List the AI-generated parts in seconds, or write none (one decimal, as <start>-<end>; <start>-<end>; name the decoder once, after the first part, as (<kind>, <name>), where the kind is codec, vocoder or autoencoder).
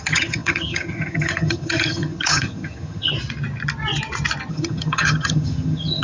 0.0-3.1 (vocoder, HiFi-GAN); 4.5-6.0